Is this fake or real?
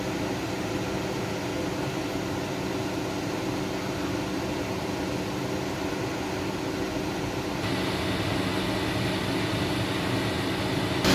real